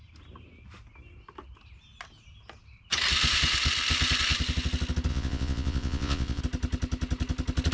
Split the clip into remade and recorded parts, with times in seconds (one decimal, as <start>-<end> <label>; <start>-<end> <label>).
0.0-5.1 recorded; 5.1-6.4 remade; 6.4-7.7 recorded